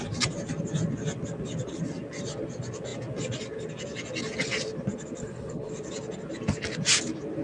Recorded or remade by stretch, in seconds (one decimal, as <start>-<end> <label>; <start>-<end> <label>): 0.0-5.2 recorded; 5.2-5.7 remade; 5.7-7.4 recorded